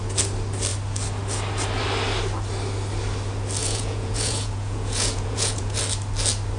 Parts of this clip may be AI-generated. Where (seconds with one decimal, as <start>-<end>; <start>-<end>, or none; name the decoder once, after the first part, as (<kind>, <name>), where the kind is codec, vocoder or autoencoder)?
3.6-5.8 (vocoder, Vocos)

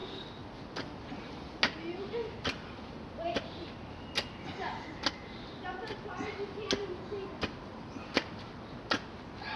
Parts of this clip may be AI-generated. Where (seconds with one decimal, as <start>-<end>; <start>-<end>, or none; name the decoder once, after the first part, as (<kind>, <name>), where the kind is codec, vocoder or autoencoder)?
none